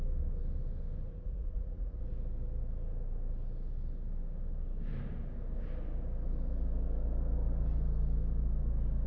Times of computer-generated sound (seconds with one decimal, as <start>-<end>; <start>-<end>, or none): 1.1-2.0